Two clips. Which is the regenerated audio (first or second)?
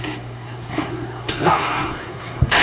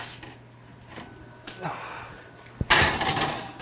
first